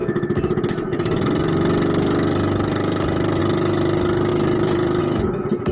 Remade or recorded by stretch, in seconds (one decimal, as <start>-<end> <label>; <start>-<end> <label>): 0.0-4.3 recorded; 4.3-5.0 remade; 5.0-5.7 recorded